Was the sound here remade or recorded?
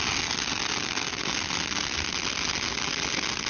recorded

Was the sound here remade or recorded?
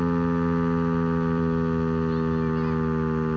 recorded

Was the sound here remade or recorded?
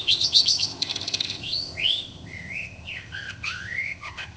remade